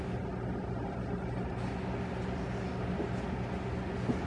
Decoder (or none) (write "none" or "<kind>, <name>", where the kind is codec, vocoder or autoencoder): none